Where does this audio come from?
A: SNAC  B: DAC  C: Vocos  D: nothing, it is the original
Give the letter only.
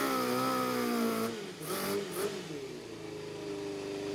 D